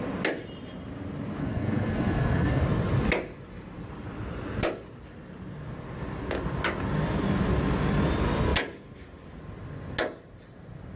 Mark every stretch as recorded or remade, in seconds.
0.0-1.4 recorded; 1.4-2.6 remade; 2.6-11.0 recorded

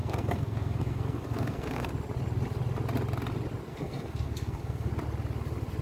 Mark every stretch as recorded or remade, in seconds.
0.0-1.9 remade; 1.9-3.7 recorded; 3.7-4.9 remade; 4.9-5.8 recorded

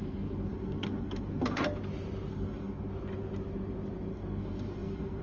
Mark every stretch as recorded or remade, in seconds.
0.0-1.6 remade; 1.6-2.3 recorded; 2.3-2.9 remade; 2.9-4.1 recorded; 4.1-5.2 remade

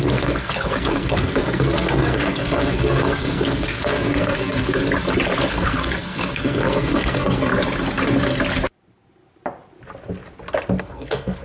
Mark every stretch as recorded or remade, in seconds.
0.0-4.8 remade; 4.8-5.5 recorded; 5.5-7.5 remade; 7.5-10.8 recorded; 10.8-11.4 remade